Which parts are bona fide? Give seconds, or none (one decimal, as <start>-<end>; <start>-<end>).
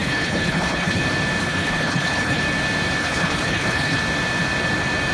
1.0-1.4; 2.4-3.0; 4.0-5.1